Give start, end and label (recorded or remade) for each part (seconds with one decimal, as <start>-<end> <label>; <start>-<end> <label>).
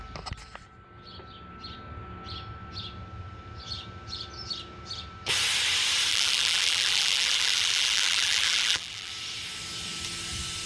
0.0-6.1 recorded; 6.1-9.1 remade; 9.1-10.7 recorded